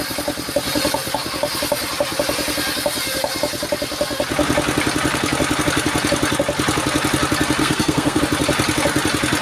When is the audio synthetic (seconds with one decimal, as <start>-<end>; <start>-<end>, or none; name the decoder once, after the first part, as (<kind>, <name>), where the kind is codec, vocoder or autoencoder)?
7.6-8.2 (codec, SNAC)